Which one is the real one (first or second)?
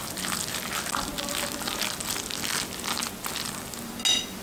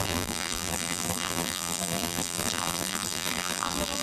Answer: first